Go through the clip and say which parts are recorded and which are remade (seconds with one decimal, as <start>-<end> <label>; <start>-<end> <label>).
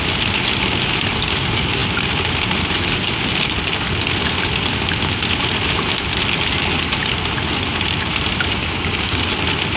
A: 0.0-8.6 recorded; 8.6-9.2 remade; 9.2-9.8 recorded